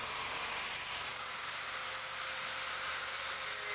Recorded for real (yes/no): yes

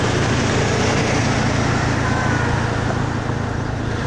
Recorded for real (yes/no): yes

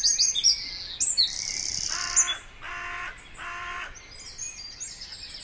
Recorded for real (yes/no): yes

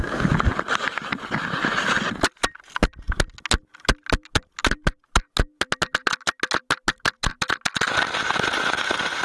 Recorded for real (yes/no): yes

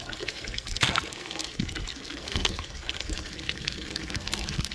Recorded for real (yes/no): no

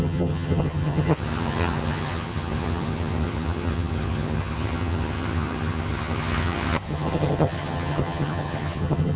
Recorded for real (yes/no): no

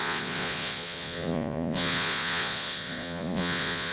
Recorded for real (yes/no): no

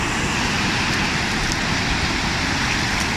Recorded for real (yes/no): yes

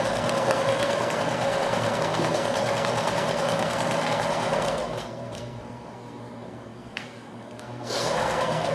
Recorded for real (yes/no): no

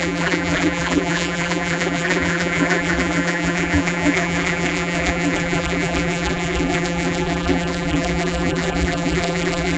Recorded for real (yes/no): no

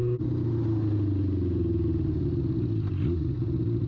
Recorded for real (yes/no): yes